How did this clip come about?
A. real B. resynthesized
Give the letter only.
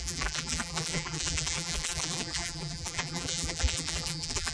B